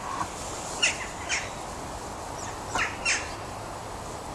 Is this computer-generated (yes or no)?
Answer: no